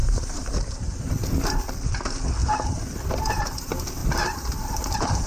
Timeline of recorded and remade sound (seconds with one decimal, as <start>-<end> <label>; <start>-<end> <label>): 0.0-1.1 remade; 1.1-4.0 recorded; 4.0-5.3 remade